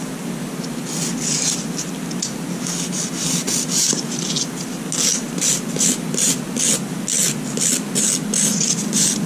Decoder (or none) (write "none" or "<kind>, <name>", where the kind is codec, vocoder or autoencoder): none